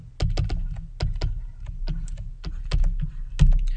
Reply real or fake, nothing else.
real